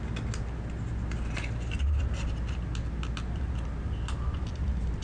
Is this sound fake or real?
real